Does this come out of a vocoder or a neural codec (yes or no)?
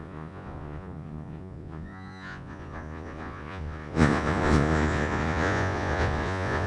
yes